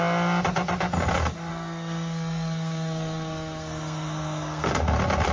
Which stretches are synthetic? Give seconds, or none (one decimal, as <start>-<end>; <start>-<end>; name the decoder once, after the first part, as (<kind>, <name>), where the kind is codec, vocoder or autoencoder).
1.5-4.7 (codec, SNAC)